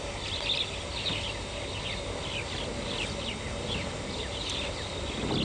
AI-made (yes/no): no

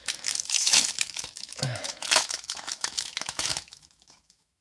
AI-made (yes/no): yes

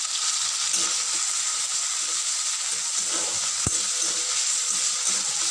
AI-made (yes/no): no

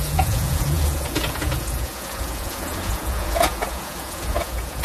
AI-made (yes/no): yes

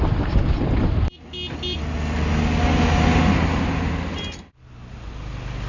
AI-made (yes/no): no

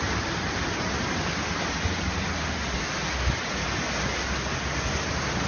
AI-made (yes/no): no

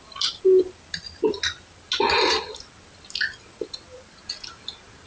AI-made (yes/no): no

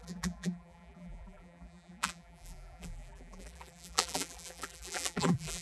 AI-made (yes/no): yes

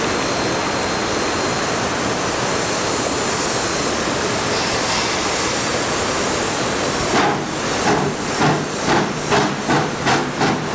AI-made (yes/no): no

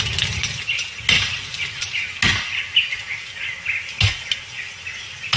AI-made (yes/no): no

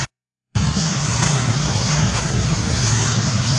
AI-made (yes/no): yes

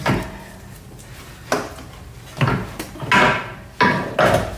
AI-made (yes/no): no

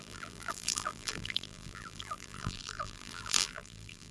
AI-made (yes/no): yes